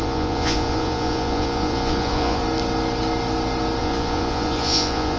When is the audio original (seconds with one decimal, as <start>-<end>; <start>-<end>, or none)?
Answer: 2.4-3.8